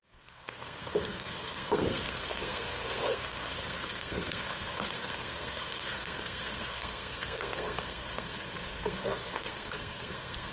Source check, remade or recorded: remade